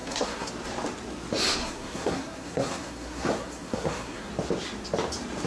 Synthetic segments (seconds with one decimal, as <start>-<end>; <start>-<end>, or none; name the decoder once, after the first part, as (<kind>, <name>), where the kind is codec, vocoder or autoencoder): 0.0-0.5 (codec, SNAC); 1.6-4.3